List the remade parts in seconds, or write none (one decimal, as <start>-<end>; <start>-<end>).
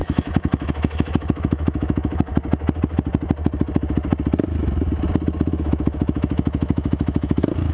0.0-2.3; 5.5-7.7